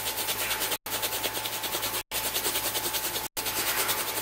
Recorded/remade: recorded